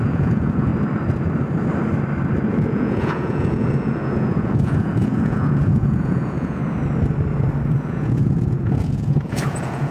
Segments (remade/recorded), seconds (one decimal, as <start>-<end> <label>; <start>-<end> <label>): 0.0-0.7 remade; 0.7-2.5 recorded; 2.5-6.6 remade; 6.6-7.7 recorded; 7.7-9.9 remade